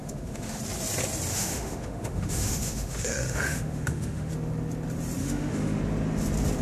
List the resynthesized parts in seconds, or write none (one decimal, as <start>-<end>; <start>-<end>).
0.0-0.6; 1.3-4.3; 5.2-5.8